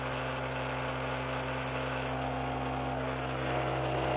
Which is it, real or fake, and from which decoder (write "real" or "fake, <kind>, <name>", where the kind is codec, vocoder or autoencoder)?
real